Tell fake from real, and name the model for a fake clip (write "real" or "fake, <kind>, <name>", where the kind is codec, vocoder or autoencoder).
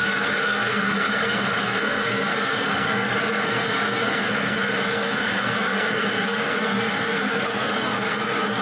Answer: fake, codec, SNAC